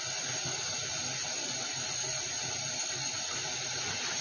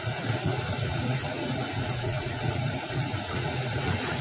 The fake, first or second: second